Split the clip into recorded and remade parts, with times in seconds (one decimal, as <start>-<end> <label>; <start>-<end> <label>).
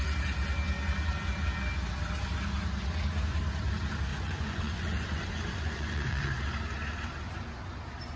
0.0-4.1 recorded; 4.1-6.3 remade; 6.3-8.2 recorded